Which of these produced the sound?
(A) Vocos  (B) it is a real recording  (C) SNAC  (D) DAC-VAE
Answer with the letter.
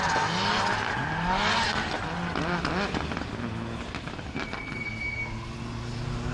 B